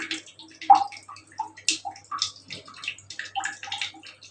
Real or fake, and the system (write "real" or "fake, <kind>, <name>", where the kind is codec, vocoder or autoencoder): real